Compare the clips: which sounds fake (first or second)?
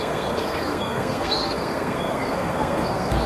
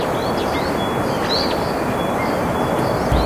first